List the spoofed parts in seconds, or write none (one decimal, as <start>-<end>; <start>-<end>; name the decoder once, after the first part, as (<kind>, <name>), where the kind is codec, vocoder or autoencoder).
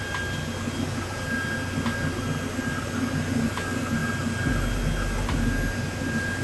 none